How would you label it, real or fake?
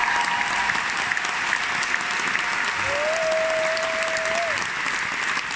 real